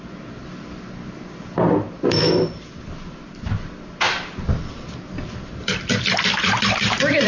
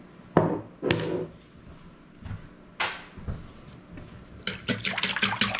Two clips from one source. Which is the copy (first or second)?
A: first